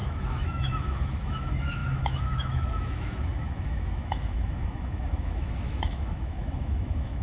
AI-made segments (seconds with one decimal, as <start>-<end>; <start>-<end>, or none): 0.0-7.2